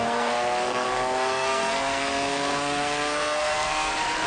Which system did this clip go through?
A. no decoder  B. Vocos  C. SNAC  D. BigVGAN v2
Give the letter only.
C